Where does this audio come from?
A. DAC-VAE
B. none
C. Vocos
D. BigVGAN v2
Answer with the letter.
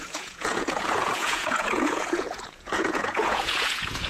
C